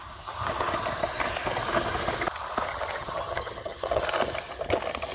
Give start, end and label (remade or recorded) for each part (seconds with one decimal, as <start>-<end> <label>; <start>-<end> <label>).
0.0-2.7 recorded; 2.7-4.0 remade; 4.0-5.1 recorded